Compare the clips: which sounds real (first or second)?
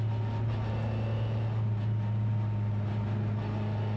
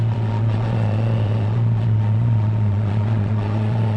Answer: first